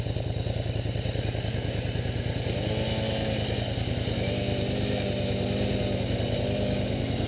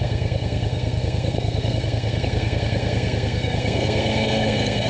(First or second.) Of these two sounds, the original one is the first